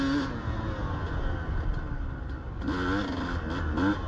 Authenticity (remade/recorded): recorded